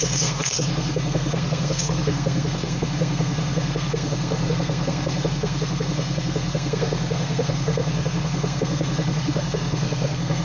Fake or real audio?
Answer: fake